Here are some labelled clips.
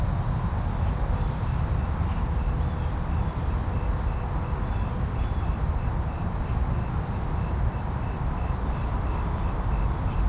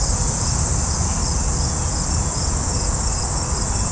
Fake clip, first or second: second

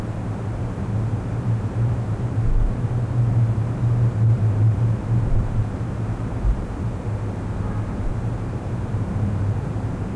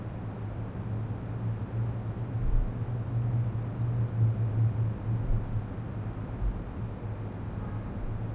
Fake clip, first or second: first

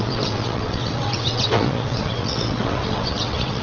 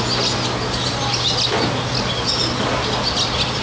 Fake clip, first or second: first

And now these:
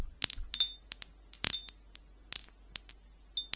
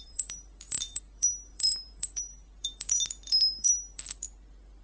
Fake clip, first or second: second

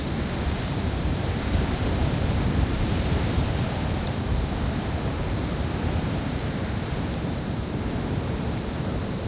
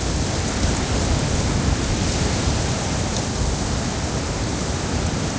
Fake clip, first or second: first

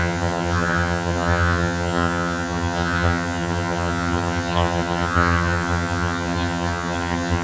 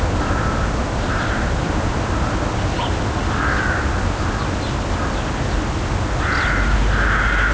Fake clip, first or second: first